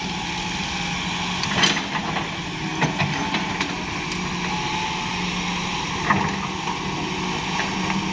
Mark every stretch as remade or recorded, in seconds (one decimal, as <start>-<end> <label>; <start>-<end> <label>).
0.0-8.1 recorded